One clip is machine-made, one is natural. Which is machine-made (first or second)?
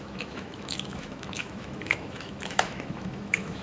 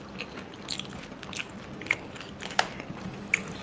first